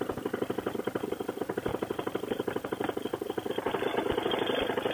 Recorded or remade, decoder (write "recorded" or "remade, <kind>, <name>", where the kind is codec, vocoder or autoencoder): recorded